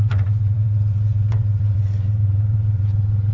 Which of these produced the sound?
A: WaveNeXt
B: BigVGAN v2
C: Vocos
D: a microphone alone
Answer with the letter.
A